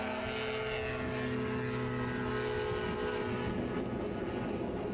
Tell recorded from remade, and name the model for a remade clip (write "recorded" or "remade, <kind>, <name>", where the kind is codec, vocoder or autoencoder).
recorded